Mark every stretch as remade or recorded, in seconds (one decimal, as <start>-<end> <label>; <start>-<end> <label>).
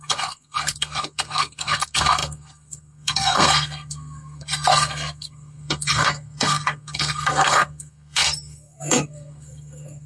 0.0-10.1 remade